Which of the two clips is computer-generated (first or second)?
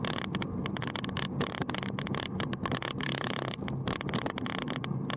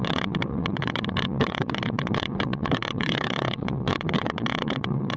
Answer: second